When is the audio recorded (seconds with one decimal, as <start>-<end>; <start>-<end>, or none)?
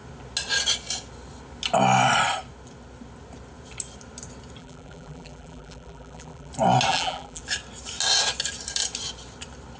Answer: 0.0-4.6; 6.5-6.9; 7.4-9.8